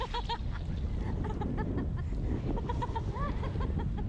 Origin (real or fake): fake